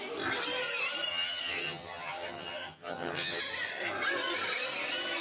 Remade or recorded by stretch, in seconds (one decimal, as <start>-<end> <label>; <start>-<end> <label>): 0.0-1.1 recorded; 1.1-3.4 remade; 3.4-5.2 recorded